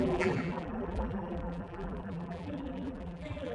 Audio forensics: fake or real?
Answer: fake